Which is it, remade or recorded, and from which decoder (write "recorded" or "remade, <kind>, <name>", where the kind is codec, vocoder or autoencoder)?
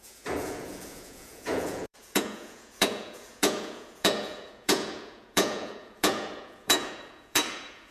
remade, vocoder, Vocos